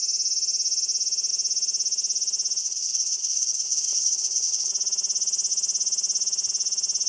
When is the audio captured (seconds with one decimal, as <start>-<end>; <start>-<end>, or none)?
0.0-2.6; 4.7-7.1